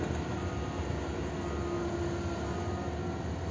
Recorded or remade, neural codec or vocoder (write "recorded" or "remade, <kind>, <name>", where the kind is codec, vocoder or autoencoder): recorded